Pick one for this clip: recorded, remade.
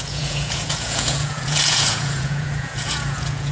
remade